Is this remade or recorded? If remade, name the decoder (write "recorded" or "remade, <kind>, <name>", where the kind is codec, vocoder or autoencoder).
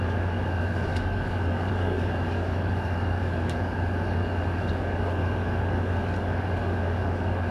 remade, codec, DAC